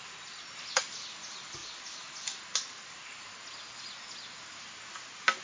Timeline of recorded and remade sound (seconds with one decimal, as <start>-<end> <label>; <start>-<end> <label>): 0.0-5.4 recorded